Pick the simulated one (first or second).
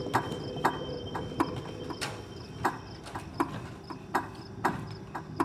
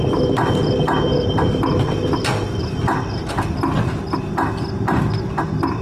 first